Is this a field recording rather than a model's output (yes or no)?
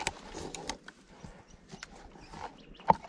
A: yes